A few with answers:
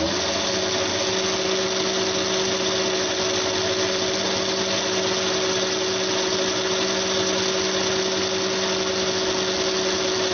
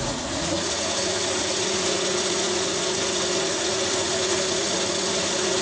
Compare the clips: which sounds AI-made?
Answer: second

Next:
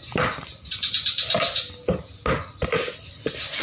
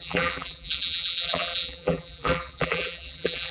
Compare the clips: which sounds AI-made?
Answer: second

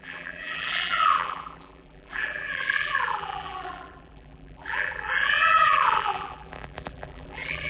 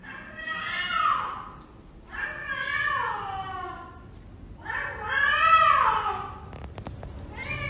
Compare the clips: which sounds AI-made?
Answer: first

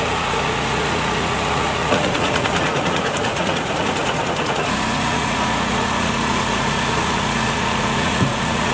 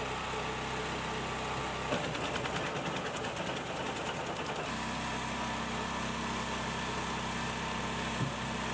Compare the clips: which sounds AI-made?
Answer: first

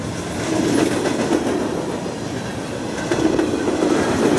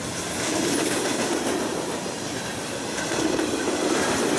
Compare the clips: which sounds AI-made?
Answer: second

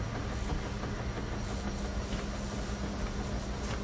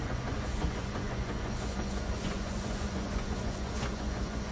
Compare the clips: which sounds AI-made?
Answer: second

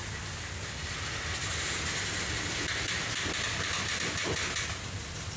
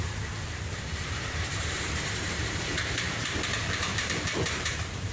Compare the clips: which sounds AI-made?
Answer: second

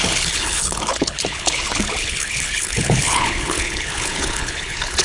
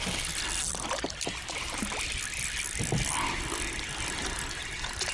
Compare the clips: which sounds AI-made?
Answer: first